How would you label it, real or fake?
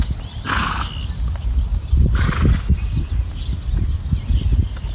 real